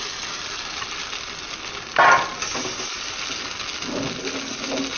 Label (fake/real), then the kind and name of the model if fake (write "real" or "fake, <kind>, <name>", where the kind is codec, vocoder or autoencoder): real